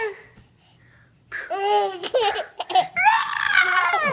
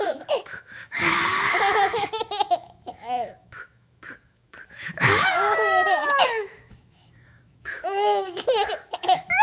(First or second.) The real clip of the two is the first